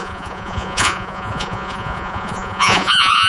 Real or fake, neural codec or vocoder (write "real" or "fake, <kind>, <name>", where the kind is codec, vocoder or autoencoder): fake, vocoder, Vocos